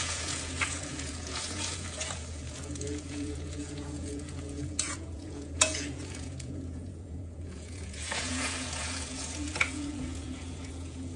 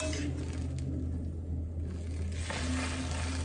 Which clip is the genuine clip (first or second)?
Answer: second